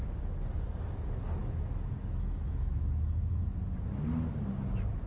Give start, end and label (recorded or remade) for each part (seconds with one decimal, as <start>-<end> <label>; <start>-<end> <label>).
0.0-1.4 recorded; 1.4-3.6 remade; 3.6-5.1 recorded